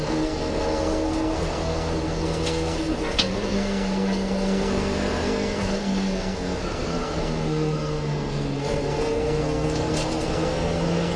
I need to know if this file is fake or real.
fake